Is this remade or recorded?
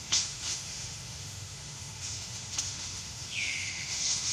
remade